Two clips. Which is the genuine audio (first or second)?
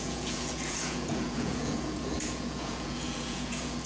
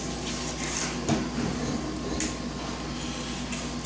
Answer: second